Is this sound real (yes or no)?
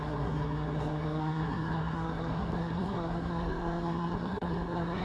no